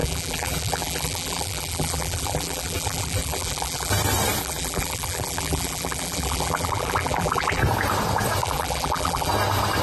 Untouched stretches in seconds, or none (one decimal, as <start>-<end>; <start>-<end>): 3.9-4.4; 7.6-8.4; 9.3-9.8